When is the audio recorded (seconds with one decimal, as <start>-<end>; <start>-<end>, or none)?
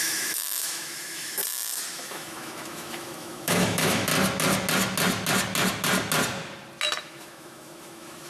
1.4-1.9; 4.1-7.0